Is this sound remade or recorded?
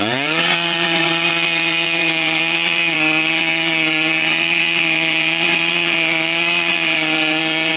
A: remade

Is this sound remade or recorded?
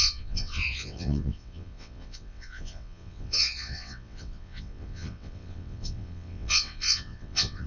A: remade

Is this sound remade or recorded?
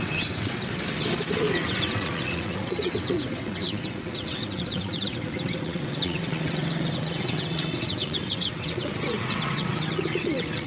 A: remade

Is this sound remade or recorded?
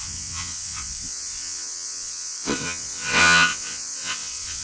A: remade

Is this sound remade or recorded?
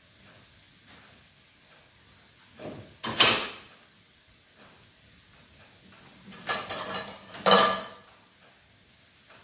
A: recorded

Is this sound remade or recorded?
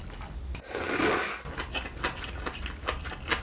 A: recorded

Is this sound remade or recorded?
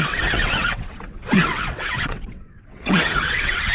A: remade